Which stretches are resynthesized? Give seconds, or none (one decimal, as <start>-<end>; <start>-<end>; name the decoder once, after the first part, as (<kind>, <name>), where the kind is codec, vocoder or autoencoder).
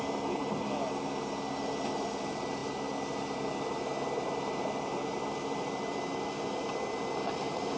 none